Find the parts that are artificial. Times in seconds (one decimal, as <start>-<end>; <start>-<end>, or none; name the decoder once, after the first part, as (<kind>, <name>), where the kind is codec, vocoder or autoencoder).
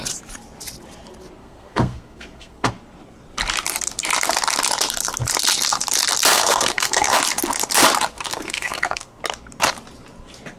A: 1.4-2.7 (codec, SNAC); 6.3-7.2; 8.1-9.2